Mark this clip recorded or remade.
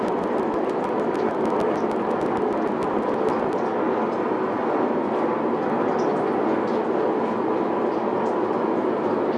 recorded